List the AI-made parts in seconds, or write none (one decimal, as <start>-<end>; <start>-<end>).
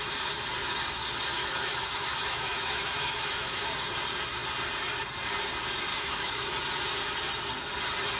1.4-3.6; 5.9-6.5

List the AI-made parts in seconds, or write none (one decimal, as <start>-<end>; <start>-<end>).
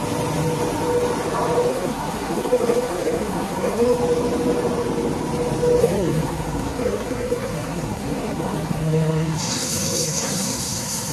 1.7-4.0; 5.8-11.1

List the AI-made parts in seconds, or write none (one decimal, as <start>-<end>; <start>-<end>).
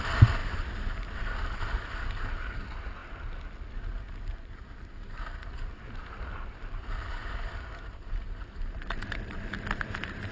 0.4-1.2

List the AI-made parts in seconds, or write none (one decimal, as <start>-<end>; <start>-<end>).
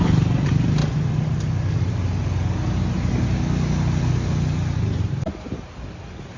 none